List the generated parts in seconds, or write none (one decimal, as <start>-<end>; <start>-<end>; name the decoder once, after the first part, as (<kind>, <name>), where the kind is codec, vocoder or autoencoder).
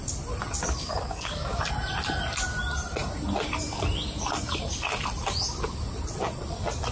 0.8-1.6 (codec, DAC)